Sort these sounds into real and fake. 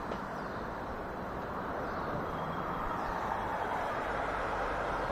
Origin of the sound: fake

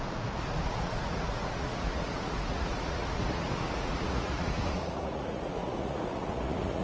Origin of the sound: fake